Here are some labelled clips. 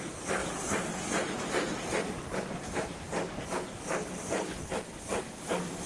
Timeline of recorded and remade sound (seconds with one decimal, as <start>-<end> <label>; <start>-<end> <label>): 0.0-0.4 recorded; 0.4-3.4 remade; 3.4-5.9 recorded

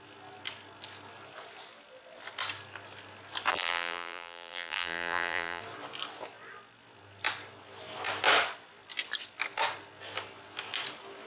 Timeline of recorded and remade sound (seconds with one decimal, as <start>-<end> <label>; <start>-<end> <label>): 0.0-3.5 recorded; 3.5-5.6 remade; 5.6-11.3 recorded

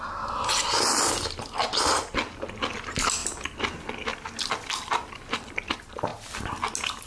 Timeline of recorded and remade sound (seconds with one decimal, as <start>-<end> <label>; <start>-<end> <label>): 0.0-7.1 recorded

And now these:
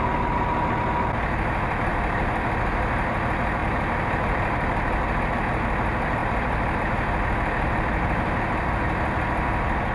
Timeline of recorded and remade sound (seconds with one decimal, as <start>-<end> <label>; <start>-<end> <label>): 0.0-1.9 recorded; 1.9-2.6 remade; 2.6-3.6 recorded; 3.6-5.2 remade; 5.2-6.2 recorded; 6.2-6.8 remade; 6.8-9.9 recorded